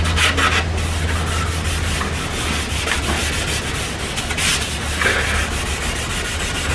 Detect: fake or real real